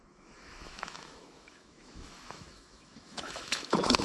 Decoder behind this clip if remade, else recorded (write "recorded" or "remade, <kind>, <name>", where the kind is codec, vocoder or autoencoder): remade, autoencoder, DAC-VAE